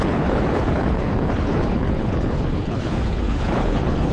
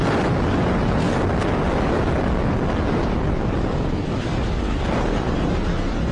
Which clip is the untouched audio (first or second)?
second